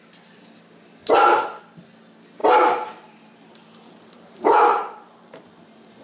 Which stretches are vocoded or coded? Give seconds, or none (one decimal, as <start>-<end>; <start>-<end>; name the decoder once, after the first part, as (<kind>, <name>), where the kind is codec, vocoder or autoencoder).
1.0-1.6 (vocoder, BigVGAN v2); 2.4-6.0